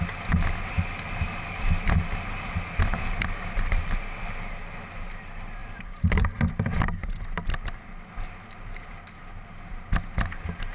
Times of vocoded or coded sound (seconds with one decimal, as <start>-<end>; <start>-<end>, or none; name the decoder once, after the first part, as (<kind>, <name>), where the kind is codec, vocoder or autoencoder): 5.6-6.4 (vocoder, BigVGAN v2)